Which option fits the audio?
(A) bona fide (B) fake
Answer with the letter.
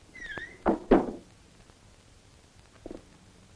A